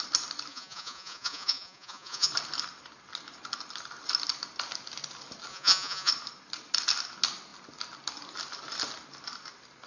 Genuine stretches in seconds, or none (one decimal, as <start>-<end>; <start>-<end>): 0.0-0.5; 2.3-5.5; 6.1-9.9